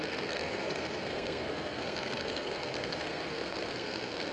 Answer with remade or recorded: remade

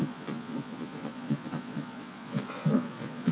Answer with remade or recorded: remade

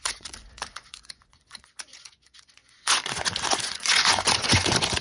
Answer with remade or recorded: remade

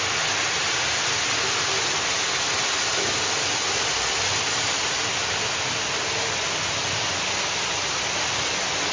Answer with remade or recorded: recorded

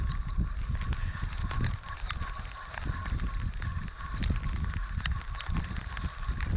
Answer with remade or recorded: recorded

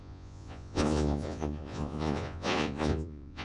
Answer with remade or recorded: remade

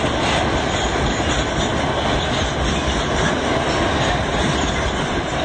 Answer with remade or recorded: recorded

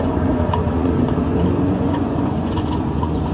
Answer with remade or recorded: remade